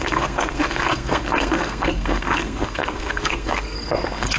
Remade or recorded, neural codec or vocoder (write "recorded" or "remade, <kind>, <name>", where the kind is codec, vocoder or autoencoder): remade, codec, SNAC